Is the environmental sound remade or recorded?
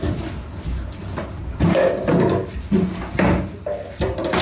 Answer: recorded